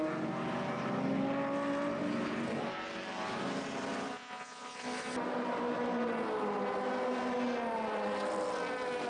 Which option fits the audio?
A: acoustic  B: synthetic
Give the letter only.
A